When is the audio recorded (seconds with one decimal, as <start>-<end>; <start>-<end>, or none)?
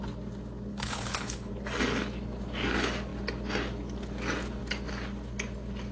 0.0-0.7; 1.5-5.9